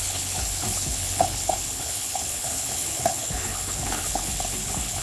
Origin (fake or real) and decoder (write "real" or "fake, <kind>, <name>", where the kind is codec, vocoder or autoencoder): fake, codec, HILCodec